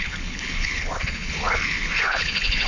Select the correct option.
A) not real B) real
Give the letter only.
A